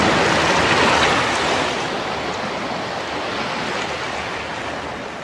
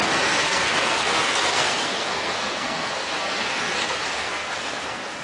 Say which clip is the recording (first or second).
first